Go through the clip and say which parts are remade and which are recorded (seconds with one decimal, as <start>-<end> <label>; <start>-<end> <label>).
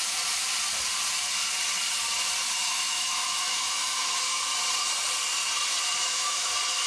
0.0-2.6 recorded; 2.6-4.4 remade; 4.4-6.0 recorded; 6.0-6.5 remade; 6.5-6.9 recorded